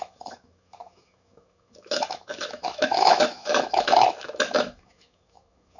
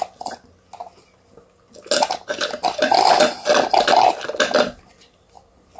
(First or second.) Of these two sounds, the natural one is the second